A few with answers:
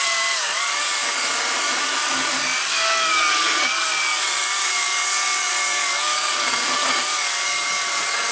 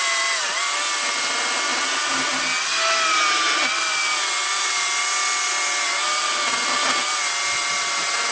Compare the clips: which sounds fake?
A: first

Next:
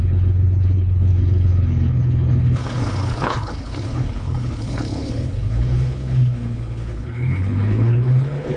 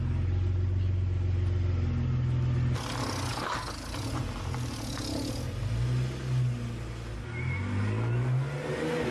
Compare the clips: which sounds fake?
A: first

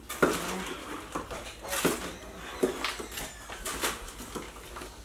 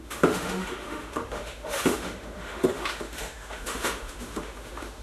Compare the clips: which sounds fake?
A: second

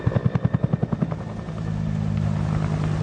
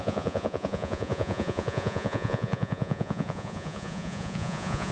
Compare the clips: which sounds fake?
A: second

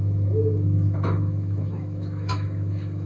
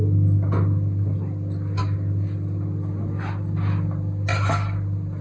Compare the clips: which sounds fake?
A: first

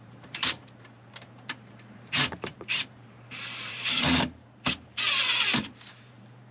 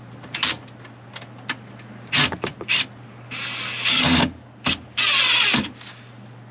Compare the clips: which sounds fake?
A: first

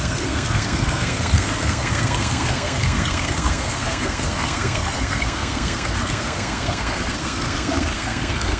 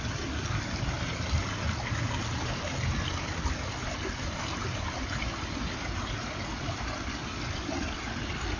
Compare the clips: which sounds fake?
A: first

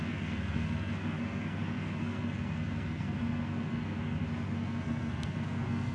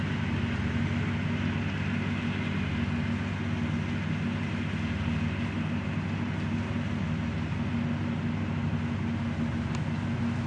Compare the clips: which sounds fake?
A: first